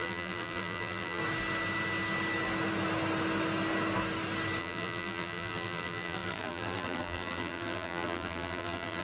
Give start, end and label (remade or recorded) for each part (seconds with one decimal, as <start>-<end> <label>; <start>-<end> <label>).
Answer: 0.0-1.2 remade; 1.2-4.6 recorded; 4.6-9.0 remade